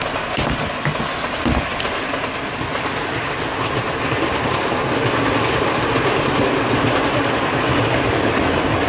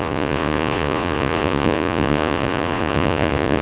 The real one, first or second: first